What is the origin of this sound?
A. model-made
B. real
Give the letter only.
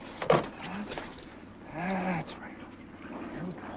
B